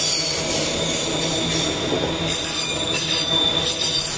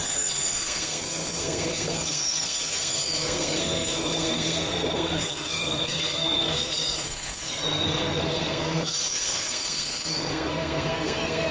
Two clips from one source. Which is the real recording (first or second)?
first